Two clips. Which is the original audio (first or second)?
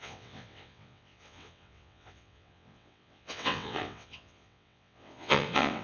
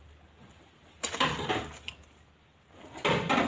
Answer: second